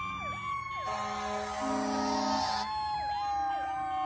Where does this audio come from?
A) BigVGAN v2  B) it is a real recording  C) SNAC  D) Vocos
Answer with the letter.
B